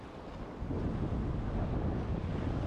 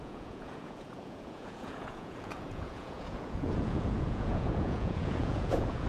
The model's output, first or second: second